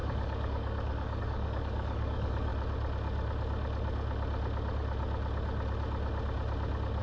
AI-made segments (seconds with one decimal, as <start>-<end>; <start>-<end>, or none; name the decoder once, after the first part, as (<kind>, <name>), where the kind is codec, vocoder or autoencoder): 0.0-2.5 (codec, DAC)